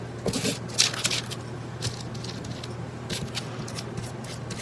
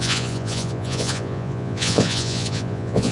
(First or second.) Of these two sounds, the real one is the first